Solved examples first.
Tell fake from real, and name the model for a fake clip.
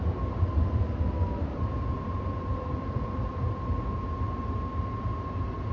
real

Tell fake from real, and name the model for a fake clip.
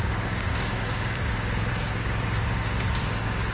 fake, codec, DAC